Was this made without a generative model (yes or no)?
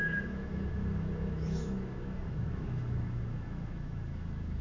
no